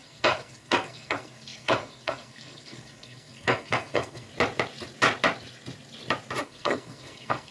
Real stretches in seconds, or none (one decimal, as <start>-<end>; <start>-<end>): 4.3-6.4